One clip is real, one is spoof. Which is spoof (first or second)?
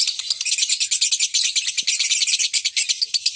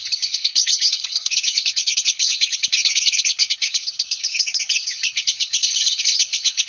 second